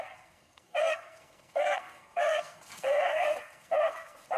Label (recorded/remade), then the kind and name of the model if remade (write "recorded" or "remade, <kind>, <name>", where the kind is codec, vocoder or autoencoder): remade, codec, SNAC